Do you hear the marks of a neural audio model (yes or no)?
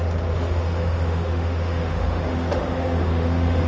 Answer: yes